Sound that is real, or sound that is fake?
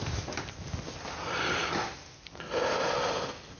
real